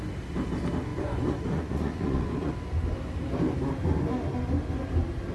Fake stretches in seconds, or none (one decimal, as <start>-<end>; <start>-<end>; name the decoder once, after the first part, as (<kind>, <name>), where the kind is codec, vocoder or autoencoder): 0.9-2.5 (vocoder, Vocos)